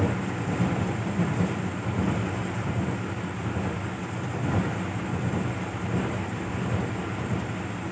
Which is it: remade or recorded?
recorded